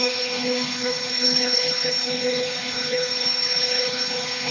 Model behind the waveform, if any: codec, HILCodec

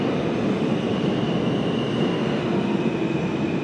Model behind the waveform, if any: none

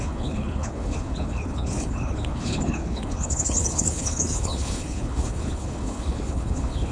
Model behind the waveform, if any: codec, HILCodec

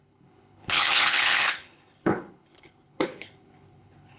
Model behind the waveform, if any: codec, HILCodec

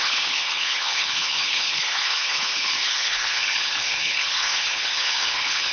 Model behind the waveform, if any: codec, HILCodec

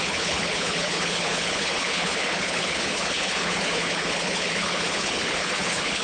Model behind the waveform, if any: codec, HILCodec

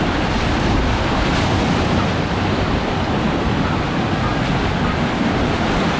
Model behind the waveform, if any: none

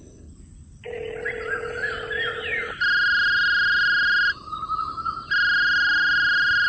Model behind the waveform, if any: none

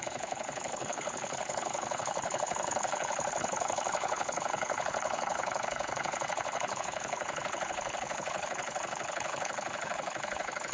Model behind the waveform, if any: codec, HILCodec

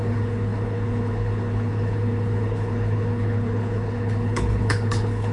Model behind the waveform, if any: codec, HILCodec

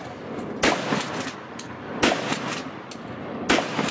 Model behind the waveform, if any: none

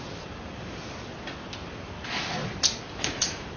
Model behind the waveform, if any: none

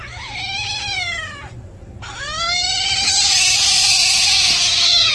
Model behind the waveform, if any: none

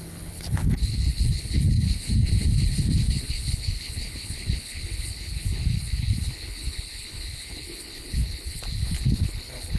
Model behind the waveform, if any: codec, HILCodec